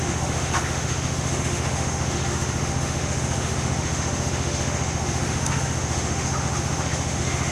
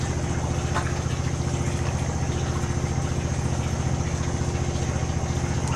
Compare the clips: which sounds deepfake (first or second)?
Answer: first